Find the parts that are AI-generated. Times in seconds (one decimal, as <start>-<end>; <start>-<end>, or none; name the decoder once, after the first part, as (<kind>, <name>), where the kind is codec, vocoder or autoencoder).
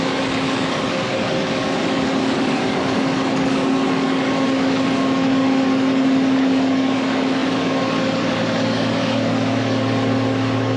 0.0-10.8 (codec, DAC)